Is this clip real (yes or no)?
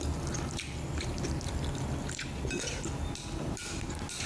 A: no